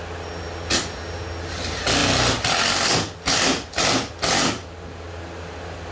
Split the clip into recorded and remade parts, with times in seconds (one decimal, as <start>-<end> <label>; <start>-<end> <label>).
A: 0.0-5.9 recorded